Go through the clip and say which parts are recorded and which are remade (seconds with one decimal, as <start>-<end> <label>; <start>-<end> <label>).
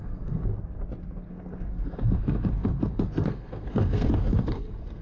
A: 0.0-0.5 remade; 0.5-1.3 recorded; 1.3-5.0 remade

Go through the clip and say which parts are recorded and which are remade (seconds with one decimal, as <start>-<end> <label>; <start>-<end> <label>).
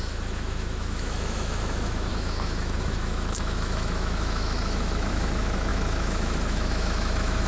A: 0.0-7.5 remade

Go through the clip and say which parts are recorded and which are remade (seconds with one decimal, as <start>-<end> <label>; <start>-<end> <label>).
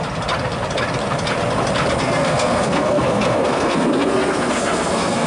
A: 0.0-2.0 recorded; 2.0-5.3 remade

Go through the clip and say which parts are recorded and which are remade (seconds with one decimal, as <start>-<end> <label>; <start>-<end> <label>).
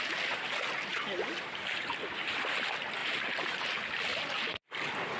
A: 0.0-3.0 recorded; 3.0-3.6 remade; 3.6-4.1 recorded; 4.1-4.6 remade; 4.6-5.2 recorded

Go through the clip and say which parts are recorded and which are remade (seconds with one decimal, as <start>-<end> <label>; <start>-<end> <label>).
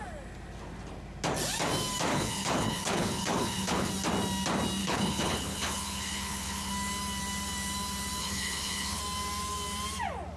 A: 0.0-2.1 recorded; 2.1-3.9 remade; 3.9-4.8 recorded; 4.8-6.7 remade; 6.7-8.2 recorded; 8.2-9.0 remade; 9.0-10.4 recorded